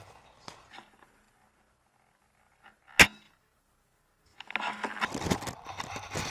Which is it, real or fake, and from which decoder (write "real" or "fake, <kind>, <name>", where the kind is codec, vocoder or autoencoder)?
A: real